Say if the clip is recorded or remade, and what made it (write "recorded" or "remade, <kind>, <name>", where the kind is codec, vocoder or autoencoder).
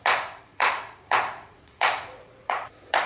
remade, vocoder, Vocos